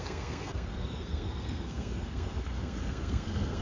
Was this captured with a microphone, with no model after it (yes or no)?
no